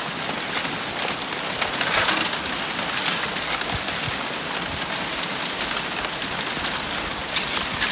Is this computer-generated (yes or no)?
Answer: no